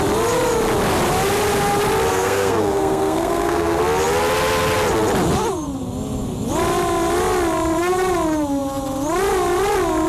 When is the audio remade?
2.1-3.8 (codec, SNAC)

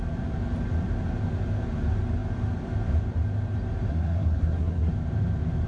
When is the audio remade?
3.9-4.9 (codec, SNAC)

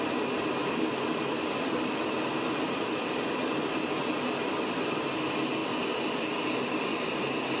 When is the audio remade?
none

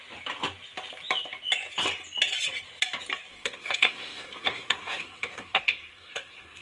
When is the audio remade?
3.3-6.6 (codec, SNAC)